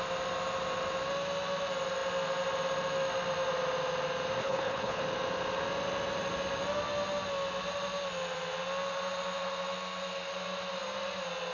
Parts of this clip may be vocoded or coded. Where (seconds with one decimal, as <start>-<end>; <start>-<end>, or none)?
4.4-5.0